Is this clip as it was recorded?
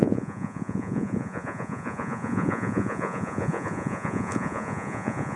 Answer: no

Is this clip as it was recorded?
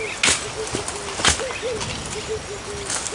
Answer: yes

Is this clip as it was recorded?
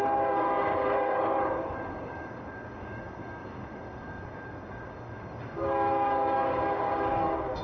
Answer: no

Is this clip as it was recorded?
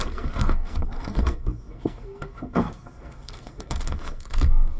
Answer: no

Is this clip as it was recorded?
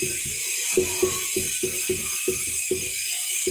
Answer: no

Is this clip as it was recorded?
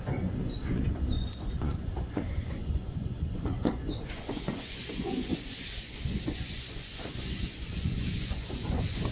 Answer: no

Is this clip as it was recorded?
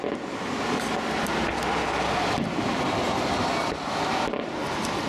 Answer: yes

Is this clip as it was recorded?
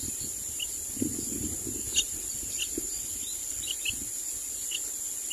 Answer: no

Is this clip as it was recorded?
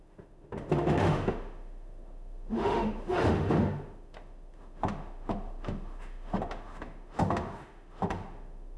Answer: no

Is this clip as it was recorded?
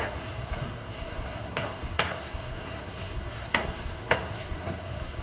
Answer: no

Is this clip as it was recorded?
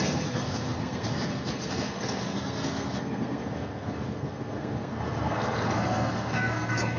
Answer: no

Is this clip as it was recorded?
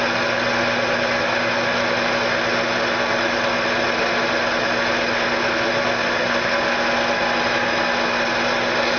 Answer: yes